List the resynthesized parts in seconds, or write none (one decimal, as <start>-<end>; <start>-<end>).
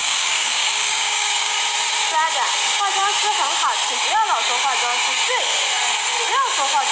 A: 0.0-1.6